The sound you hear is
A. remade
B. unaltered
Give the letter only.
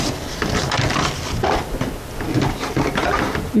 B